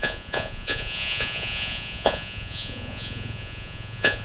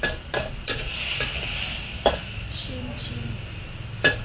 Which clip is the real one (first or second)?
second